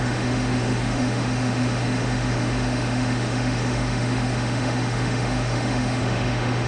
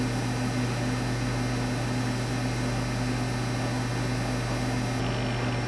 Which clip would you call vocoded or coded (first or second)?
first